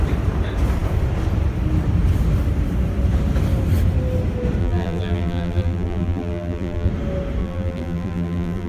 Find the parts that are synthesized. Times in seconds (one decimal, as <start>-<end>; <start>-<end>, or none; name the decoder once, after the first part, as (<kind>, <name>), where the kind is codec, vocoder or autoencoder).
4.6-6.9 (vocoder, BigVGAN v2); 7.4-8.7